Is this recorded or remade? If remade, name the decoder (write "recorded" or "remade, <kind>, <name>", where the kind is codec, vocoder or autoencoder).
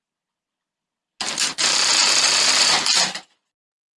recorded